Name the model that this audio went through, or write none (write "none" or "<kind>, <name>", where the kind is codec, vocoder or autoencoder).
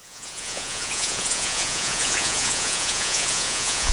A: vocoder, Vocos